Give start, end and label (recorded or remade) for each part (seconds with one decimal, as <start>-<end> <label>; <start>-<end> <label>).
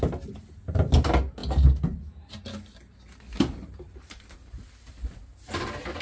0.0-6.0 recorded